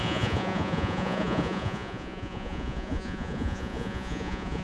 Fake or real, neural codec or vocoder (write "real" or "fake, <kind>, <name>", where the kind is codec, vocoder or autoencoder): fake, vocoder, Vocos